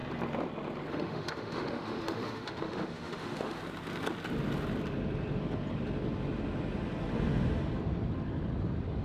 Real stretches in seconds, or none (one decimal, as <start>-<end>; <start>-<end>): 0.0-0.9; 3.6-9.0

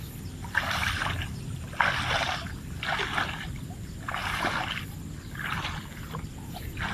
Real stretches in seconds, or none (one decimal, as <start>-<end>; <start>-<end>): 0.0-6.9

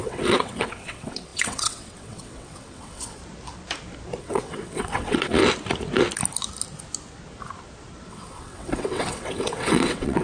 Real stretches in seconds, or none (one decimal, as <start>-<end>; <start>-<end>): 3.2-4.2; 5.4-8.1

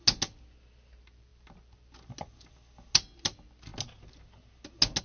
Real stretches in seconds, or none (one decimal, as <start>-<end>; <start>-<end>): 0.0-5.0

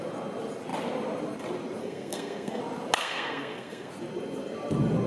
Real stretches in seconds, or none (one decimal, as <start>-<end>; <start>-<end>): 0.0-1.8; 2.6-3.0; 3.9-5.1

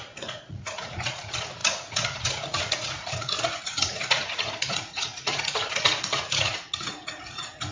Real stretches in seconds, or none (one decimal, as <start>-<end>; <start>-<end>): none